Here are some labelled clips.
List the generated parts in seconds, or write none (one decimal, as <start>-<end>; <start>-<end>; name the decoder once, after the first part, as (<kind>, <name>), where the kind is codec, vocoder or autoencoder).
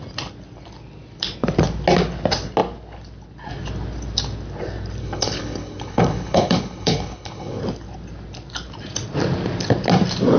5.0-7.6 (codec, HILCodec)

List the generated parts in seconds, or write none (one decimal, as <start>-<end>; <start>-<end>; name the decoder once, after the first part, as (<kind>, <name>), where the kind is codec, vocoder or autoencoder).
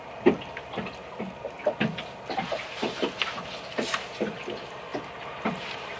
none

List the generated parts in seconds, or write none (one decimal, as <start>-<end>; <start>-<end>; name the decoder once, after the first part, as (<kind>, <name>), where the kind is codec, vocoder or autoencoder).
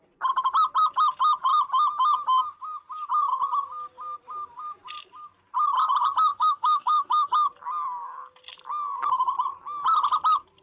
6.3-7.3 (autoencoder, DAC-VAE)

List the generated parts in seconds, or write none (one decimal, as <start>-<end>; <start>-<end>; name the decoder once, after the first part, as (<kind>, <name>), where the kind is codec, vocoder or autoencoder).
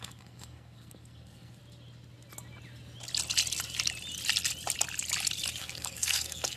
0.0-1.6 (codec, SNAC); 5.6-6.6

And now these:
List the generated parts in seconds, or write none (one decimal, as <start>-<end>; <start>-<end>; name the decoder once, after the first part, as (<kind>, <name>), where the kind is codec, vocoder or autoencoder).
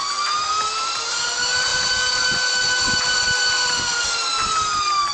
none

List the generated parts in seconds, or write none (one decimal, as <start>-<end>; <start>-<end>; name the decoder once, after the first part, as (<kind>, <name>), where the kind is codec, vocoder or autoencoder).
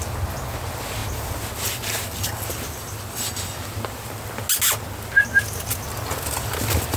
none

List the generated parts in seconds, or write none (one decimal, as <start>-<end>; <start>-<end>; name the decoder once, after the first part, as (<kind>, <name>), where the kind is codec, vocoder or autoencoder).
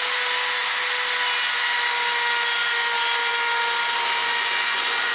4.2-5.1 (vocoder, Vocos)